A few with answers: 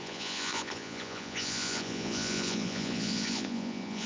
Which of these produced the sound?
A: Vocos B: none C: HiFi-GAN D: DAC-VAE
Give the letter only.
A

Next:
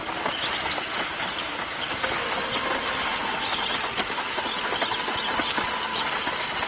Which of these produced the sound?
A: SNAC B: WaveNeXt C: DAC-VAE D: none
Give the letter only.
D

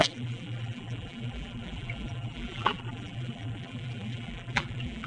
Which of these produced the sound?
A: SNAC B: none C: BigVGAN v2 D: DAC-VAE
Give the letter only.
C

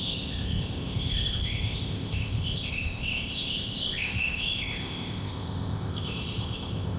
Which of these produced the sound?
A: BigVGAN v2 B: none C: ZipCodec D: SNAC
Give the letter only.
C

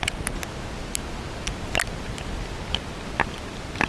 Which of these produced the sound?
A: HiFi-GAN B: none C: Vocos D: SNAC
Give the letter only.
B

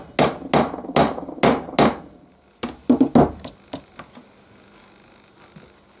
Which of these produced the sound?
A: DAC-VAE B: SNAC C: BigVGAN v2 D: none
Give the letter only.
D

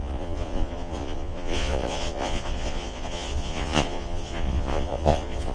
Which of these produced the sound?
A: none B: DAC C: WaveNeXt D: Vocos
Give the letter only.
D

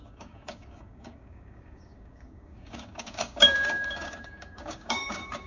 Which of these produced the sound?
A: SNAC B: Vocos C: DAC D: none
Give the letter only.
C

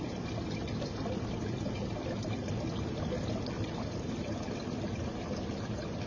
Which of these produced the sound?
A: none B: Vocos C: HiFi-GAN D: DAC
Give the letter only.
A